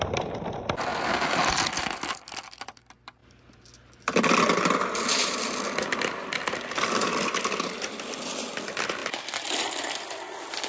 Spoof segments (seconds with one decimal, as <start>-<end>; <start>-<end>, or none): none